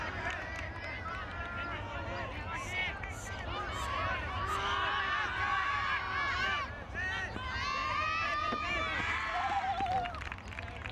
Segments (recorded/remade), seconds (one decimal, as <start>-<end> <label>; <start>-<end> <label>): 0.0-10.9 recorded